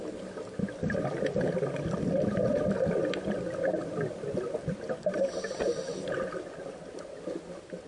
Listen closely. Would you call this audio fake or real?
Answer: real